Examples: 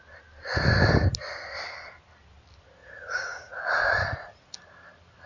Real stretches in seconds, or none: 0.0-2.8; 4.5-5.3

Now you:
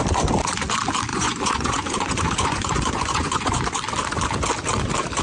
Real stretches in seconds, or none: 0.0-1.1; 3.6-5.2

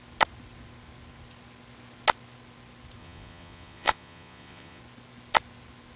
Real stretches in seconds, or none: 0.0-3.0; 4.8-6.0

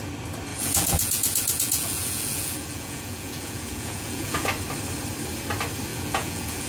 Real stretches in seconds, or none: 0.0-0.5; 4.5-5.9

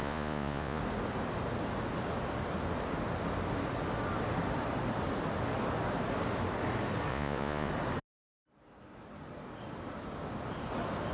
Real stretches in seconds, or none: 0.8-7.1; 7.7-11.1

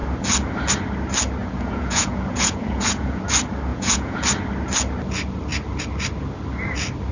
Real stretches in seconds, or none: 0.0-1.4; 3.2-3.7; 4.2-7.1

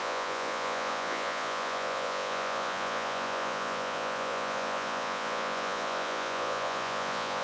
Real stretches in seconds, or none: none

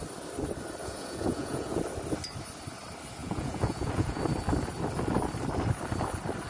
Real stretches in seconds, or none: 0.0-0.8; 1.8-3.2; 4.2-6.5